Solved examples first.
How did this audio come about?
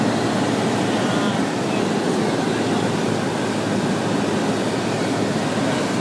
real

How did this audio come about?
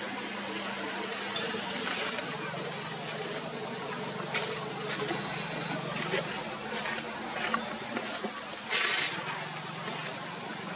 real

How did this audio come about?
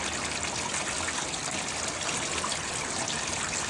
real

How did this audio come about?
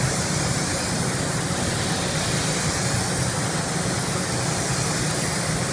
real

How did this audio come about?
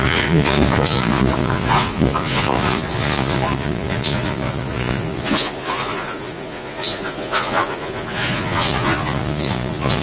fake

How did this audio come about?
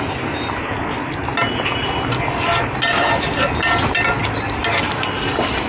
real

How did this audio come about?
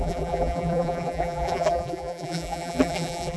fake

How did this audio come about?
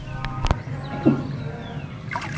real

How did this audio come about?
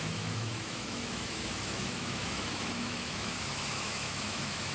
fake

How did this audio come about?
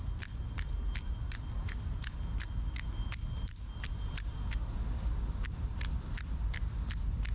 real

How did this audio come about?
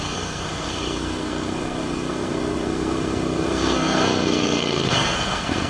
fake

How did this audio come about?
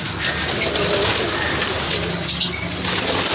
real